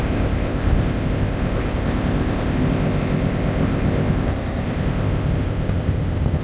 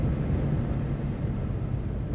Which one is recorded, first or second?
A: second